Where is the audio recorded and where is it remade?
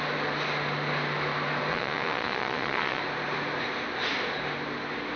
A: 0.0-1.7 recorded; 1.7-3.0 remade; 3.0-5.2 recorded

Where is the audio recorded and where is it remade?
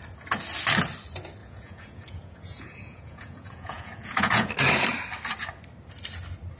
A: 0.0-1.4 recorded; 1.4-4.5 remade; 4.5-6.6 recorded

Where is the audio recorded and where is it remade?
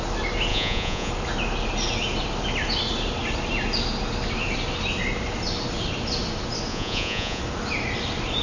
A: 0.0-0.5 recorded; 0.5-1.1 remade; 1.1-6.7 recorded; 6.7-7.4 remade; 7.4-8.4 recorded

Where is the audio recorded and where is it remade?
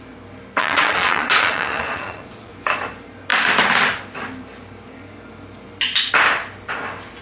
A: 0.0-0.6 recorded; 0.6-2.5 remade; 2.5-7.2 recorded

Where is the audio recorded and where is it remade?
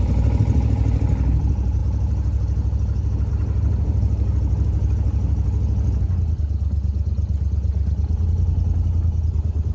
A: 0.0-9.7 recorded